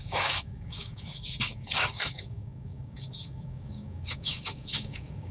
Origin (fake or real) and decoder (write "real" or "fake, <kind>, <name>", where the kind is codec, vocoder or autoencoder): fake, codec, DAC